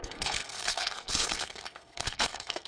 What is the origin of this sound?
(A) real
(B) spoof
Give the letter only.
B